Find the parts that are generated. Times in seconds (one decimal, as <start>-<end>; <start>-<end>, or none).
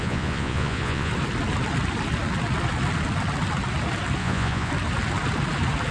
0.0-1.1; 4.2-4.7